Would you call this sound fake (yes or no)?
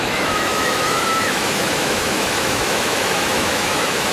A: yes